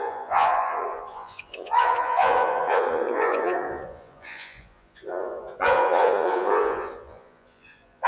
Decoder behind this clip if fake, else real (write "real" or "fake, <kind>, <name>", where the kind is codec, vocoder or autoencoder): fake, vocoder, Vocos